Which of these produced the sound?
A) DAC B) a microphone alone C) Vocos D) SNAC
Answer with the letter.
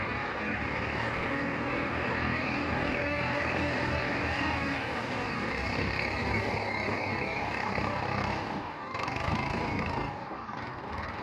A